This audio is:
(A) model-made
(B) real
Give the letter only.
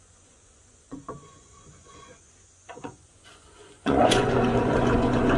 A